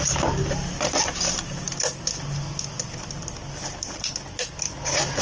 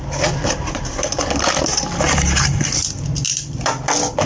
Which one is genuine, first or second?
first